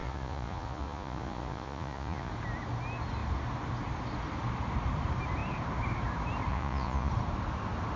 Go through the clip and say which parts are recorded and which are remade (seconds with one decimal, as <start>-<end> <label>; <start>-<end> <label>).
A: 0.0-2.3 remade; 2.3-6.5 recorded; 6.5-7.1 remade; 7.1-8.0 recorded